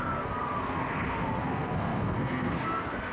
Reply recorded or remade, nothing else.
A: remade